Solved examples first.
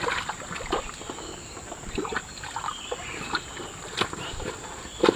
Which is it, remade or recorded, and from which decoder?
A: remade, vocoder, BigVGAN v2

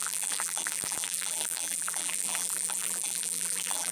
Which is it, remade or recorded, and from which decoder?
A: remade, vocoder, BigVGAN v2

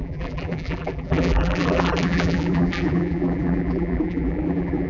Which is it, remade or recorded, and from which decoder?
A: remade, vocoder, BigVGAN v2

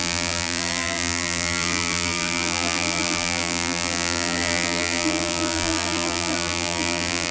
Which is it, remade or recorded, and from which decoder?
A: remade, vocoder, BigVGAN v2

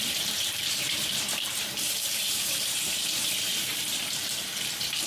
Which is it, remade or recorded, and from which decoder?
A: remade, vocoder, BigVGAN v2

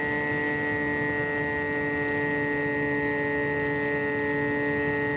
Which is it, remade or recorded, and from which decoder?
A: recorded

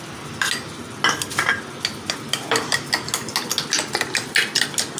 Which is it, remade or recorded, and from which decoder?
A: recorded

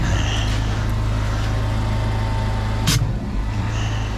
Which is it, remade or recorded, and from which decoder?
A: recorded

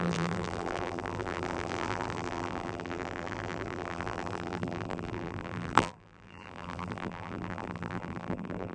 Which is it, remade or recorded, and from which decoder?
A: remade, vocoder, BigVGAN v2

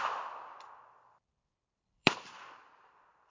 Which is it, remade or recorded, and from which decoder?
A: remade, vocoder, BigVGAN v2